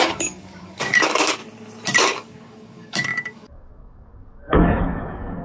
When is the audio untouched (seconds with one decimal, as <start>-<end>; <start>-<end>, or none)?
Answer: 1.4-2.0